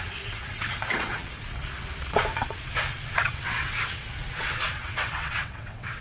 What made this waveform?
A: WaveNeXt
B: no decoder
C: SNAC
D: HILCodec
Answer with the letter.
A